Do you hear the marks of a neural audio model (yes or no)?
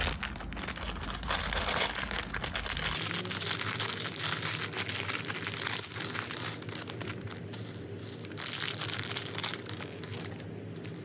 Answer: no